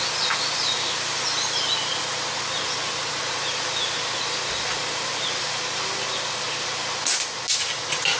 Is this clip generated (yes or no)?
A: no